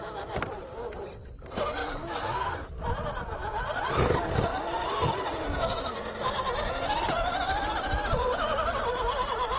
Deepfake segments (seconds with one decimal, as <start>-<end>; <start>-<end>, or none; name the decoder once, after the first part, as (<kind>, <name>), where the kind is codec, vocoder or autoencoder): 1.8-2.7 (codec, DAC)